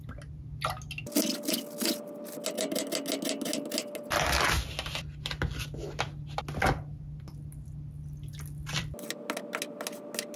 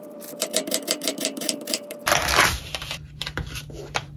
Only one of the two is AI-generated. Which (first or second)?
second